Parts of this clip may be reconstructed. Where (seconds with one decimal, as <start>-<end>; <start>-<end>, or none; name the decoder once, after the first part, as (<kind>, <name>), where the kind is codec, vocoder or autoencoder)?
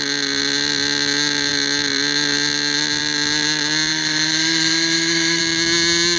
3.9-5.4 (autoencoder, DAC-VAE)